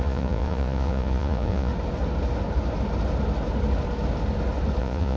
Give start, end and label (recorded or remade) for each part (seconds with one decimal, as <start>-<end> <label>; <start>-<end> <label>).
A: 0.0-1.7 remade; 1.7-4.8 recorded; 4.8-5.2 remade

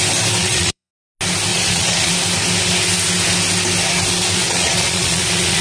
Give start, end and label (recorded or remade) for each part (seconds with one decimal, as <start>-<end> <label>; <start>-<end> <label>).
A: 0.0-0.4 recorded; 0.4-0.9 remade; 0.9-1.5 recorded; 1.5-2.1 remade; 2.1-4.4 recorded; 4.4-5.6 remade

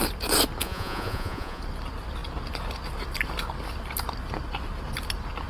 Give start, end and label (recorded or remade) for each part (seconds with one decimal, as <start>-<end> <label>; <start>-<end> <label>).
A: 0.0-0.6 recorded; 0.6-1.6 remade; 1.6-5.5 recorded

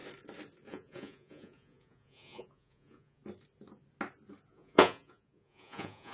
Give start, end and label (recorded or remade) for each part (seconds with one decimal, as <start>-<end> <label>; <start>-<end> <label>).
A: 0.0-0.7 recorded; 0.7-3.2 remade; 3.2-4.5 recorded; 4.5-6.1 remade

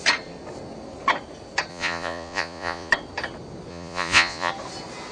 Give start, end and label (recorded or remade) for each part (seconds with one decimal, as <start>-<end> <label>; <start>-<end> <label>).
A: 0.0-1.7 recorded; 1.7-2.9 remade; 2.9-3.7 recorded; 3.7-4.5 remade; 4.5-5.1 recorded

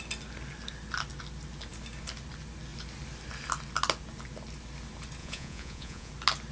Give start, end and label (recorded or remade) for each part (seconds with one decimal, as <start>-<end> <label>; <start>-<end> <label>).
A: 0.0-5.2 recorded; 5.2-6.1 remade; 6.1-6.5 recorded

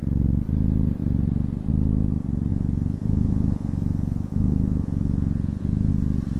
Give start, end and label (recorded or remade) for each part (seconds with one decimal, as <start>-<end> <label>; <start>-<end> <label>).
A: 0.0-2.5 recorded; 2.5-5.9 remade; 5.9-6.4 recorded

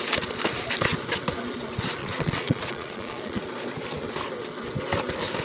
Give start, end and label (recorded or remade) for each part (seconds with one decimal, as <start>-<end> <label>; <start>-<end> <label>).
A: 0.0-2.0 recorded; 2.0-3.4 remade; 3.4-5.4 recorded